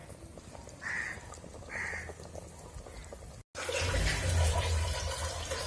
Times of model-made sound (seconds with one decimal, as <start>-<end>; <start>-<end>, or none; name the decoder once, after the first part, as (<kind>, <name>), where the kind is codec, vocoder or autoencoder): none